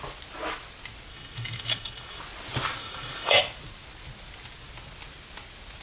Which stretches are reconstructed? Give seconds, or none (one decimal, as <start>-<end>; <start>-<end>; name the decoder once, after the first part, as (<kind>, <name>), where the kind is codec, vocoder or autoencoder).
1.1-2.2 (autoencoder, DAC-VAE); 2.8-3.4